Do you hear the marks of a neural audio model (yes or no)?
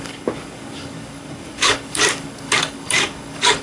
yes